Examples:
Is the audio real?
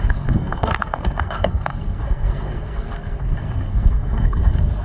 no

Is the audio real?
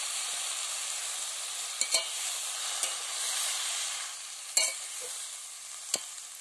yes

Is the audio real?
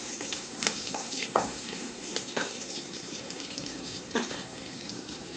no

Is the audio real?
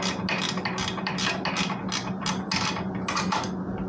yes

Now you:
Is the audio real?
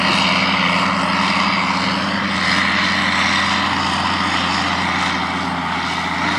yes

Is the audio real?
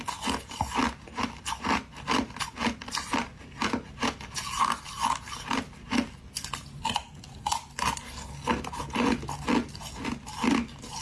yes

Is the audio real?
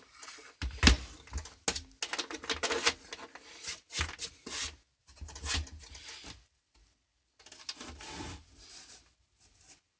yes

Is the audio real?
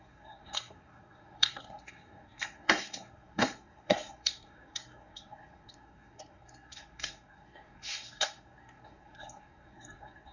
no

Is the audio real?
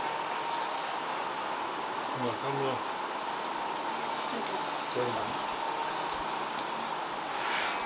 yes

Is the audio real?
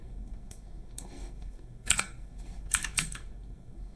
no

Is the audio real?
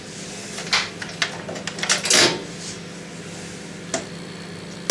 yes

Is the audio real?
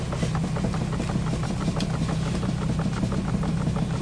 yes